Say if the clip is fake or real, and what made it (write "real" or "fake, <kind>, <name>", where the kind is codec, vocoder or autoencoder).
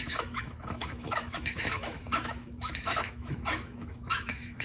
fake, autoencoder, DAC-VAE